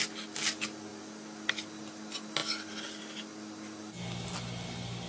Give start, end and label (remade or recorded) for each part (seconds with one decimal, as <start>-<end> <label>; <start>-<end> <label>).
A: 0.0-5.1 recorded